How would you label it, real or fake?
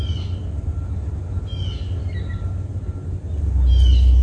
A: real